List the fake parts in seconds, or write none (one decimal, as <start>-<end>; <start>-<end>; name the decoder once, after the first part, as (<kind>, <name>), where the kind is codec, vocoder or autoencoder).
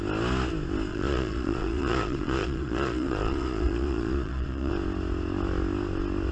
0.9-4.7 (vocoder, Vocos)